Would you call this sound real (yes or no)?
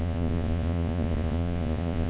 no